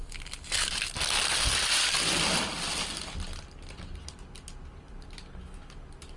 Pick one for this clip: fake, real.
real